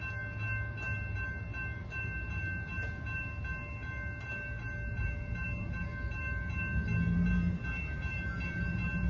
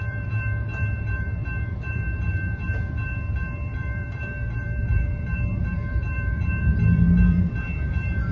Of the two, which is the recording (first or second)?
first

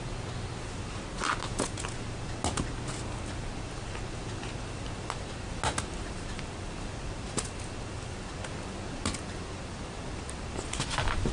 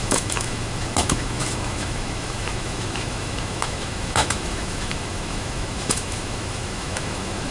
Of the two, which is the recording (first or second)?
first